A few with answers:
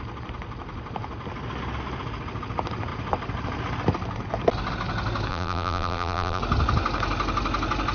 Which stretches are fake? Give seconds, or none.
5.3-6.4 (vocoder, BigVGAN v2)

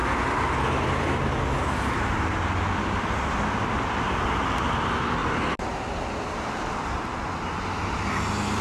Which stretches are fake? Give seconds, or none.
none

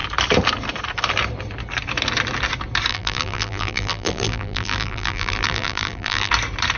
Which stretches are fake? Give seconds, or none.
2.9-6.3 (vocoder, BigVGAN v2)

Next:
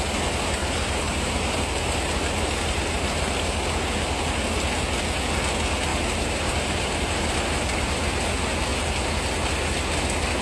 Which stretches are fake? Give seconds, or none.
0.6-2.8 (vocoder, BigVGAN v2); 5.9-8.0